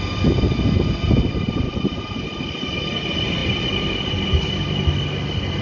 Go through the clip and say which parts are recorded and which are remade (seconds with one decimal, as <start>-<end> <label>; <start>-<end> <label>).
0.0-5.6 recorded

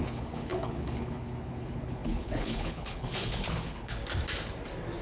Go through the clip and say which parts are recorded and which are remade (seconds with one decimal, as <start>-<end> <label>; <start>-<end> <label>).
0.0-4.0 remade; 4.0-5.0 recorded

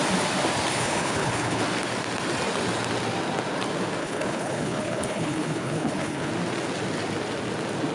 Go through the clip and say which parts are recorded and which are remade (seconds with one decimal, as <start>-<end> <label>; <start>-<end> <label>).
0.0-0.7 recorded; 0.7-1.6 remade; 1.6-4.0 recorded; 4.0-6.3 remade; 6.3-7.9 recorded

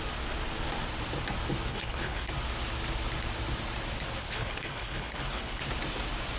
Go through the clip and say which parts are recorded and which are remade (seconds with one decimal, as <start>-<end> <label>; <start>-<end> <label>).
0.0-1.7 recorded; 1.7-2.3 remade; 2.3-4.2 recorded; 4.2-5.6 remade; 5.6-6.4 recorded